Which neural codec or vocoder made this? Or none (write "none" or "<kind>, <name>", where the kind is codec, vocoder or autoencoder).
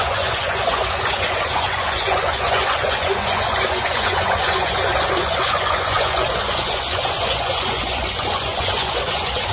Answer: vocoder, Vocos